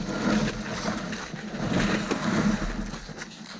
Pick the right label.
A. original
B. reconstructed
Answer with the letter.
A